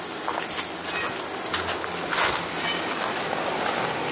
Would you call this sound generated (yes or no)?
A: no